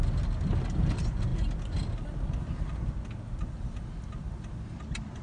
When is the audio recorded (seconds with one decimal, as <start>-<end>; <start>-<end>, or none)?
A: 0.0-5.2